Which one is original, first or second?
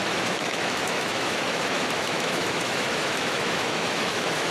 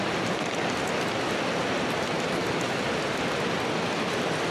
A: second